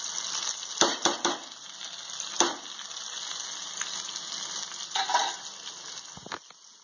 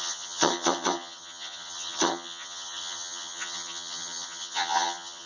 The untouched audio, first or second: first